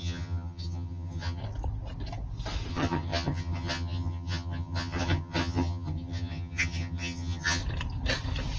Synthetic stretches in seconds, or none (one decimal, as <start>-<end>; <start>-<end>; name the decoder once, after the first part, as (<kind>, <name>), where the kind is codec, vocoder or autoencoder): 0.0-1.4 (vocoder, HiFi-GAN); 2.7-7.6